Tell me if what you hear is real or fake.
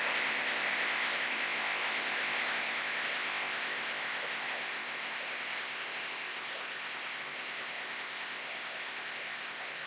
fake